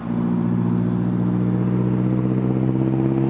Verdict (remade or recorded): recorded